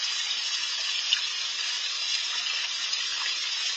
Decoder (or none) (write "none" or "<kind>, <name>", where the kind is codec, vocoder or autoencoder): none